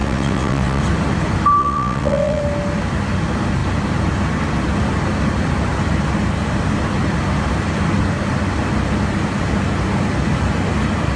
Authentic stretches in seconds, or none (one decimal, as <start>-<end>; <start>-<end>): 0.8-1.6; 2.4-11.2